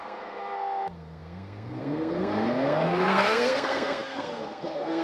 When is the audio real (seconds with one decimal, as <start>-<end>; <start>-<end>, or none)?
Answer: none